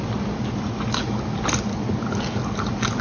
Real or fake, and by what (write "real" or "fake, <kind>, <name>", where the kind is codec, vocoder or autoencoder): real